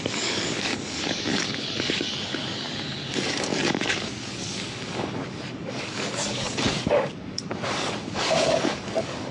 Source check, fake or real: fake